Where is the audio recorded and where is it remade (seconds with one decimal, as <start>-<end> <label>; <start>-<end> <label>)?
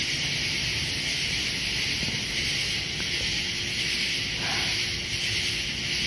0.0-6.1 recorded